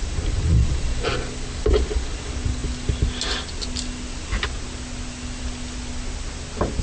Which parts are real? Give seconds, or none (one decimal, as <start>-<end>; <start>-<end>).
0.0-6.8